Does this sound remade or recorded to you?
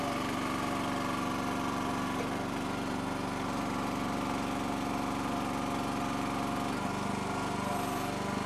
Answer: recorded